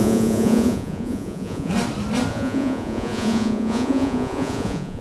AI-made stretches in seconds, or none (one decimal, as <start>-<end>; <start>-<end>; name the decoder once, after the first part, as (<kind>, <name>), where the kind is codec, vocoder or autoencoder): 0.0-1.7 (vocoder, Vocos); 2.3-5.0